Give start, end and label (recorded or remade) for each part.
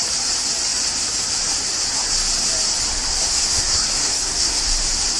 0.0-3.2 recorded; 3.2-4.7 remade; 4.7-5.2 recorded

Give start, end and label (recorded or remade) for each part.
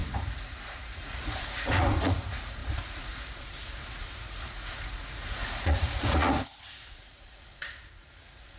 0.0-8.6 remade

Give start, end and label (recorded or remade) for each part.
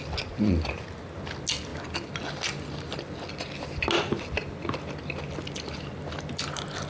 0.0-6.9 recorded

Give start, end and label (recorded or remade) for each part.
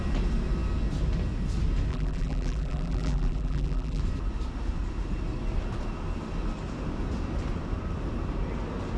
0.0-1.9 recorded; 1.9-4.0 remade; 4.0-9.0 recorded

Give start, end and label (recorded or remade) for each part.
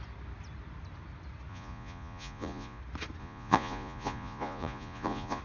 0.0-1.5 recorded; 1.5-2.8 remade; 2.8-3.2 recorded; 3.2-5.4 remade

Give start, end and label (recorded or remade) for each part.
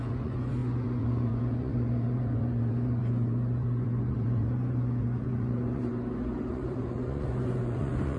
0.0-5.9 remade; 5.9-6.5 recorded; 6.5-8.2 remade